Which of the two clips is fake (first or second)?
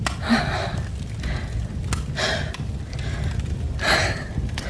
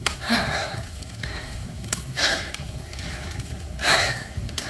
second